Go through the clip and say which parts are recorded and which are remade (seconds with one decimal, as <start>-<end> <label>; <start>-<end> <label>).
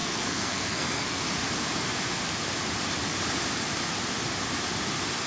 0.0-1.2 remade; 1.2-5.3 recorded